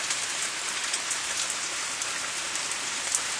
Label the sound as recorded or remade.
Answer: recorded